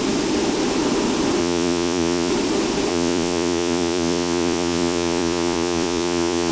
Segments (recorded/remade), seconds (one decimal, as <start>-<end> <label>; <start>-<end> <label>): 0.0-1.4 recorded; 1.4-2.3 remade; 2.3-2.9 recorded; 2.9-6.5 remade